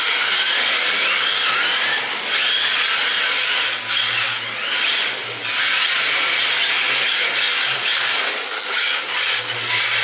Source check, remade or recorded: recorded